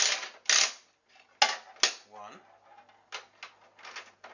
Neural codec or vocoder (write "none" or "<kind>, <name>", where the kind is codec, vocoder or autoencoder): none